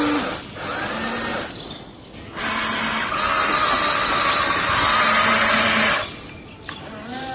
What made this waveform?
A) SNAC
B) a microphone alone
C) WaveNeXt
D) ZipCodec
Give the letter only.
B